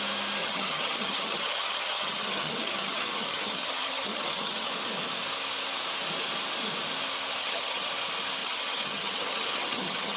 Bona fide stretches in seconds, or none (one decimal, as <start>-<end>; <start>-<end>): 0.0-0.4; 4.7-7.4; 7.9-8.4